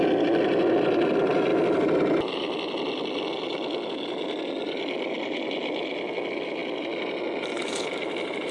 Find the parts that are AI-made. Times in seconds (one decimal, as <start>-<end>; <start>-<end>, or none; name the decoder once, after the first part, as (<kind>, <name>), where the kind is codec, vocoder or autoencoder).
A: none